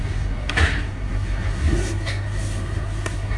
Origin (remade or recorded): remade